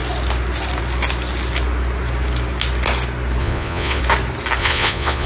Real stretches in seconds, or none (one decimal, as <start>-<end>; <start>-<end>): 0.0-3.4; 4.0-4.6